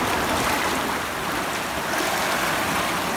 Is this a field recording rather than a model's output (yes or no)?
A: yes